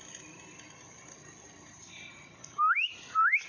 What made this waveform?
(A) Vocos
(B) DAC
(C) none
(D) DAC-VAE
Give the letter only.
C